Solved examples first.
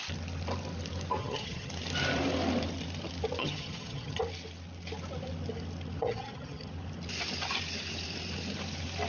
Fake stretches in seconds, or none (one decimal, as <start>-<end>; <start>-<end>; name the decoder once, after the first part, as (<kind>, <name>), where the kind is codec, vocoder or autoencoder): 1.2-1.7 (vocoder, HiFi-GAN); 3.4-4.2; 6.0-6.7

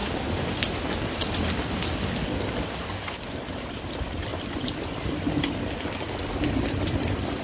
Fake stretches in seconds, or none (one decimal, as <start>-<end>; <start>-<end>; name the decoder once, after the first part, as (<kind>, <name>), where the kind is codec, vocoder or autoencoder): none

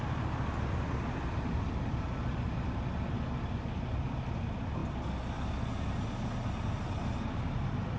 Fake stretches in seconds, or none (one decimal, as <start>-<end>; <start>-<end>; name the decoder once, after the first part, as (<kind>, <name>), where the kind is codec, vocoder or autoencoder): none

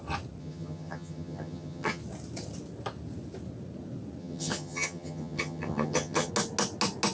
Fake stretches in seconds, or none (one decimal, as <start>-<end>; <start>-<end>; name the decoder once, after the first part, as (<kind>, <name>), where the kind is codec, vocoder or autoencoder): 0.4-2.0 (vocoder, HiFi-GAN); 4.2-6.3

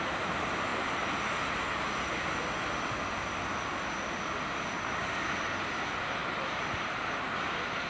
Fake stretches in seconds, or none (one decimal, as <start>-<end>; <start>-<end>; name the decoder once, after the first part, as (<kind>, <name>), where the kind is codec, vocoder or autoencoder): none

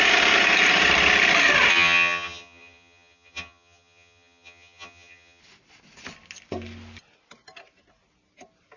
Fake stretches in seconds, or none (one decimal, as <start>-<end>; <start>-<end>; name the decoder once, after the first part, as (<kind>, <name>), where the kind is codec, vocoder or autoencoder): 1.7-5.4 (vocoder, HiFi-GAN)

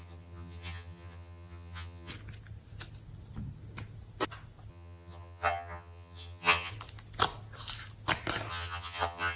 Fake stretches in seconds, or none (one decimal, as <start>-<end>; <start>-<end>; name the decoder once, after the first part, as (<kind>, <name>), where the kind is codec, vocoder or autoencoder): 0.0-2.1 (vocoder, HiFi-GAN); 4.7-6.7; 8.5-9.4

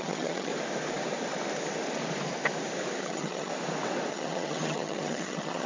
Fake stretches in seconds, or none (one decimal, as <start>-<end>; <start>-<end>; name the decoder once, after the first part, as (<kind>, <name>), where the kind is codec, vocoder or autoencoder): 0.0-0.5 (vocoder, HiFi-GAN); 3.0-3.5; 4.1-5.7